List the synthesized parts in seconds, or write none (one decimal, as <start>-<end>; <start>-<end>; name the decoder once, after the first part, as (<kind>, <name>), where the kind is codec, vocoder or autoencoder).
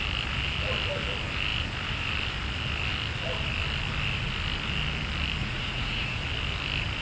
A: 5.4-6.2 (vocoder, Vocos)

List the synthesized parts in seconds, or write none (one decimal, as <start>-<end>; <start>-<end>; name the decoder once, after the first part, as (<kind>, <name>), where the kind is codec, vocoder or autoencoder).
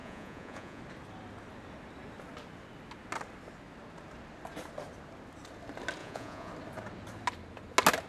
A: 0.0-0.8 (vocoder, Vocos); 6.0-6.5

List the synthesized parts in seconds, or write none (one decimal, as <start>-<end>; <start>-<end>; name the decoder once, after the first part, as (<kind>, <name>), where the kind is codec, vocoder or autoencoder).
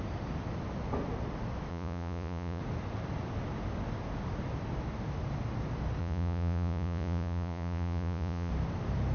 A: 1.7-2.6 (vocoder, Vocos); 6.0-8.5